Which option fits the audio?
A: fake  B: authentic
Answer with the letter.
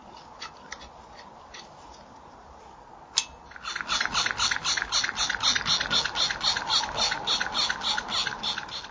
B